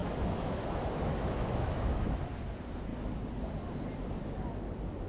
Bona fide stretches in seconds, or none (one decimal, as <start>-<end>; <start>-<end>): 2.2-5.1